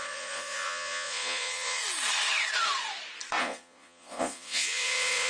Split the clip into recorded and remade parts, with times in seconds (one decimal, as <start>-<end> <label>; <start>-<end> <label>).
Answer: 0.0-1.8 remade; 1.8-3.4 recorded; 3.4-5.3 remade